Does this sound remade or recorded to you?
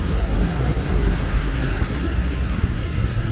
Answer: remade